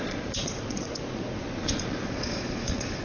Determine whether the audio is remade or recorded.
remade